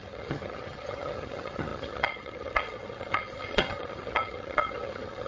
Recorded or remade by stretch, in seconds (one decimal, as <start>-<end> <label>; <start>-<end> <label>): 0.0-5.3 remade